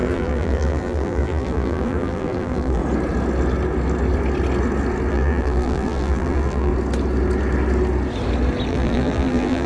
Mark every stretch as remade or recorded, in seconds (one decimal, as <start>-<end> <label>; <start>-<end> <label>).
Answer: 0.0-2.8 remade; 2.8-5.1 recorded; 5.1-6.7 remade; 6.7-8.7 recorded; 8.7-9.7 remade